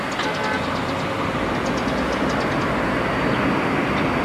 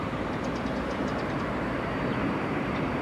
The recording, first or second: first